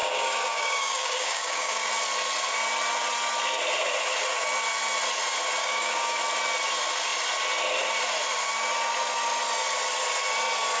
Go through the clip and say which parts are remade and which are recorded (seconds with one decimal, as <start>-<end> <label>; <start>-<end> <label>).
0.0-1.9 remade; 1.9-5.6 recorded; 5.6-6.2 remade; 6.2-10.8 recorded